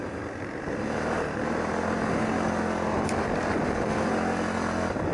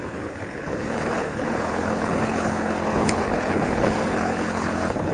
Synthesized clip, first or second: second